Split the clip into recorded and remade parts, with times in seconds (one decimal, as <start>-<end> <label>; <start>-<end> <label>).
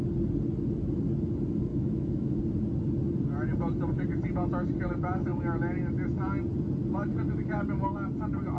0.0-1.7 recorded; 1.7-2.4 remade; 2.4-8.6 recorded